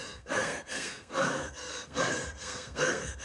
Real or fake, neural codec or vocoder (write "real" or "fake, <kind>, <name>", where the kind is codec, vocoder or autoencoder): fake, codec, SNAC